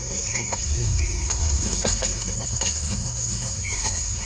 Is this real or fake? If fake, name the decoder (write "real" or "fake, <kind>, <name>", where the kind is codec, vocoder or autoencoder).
fake, codec, SNAC